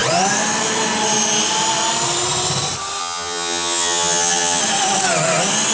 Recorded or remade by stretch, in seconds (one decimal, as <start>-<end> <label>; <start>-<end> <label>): 0.0-3.0 recorded; 3.0-4.6 remade; 4.6-5.7 recorded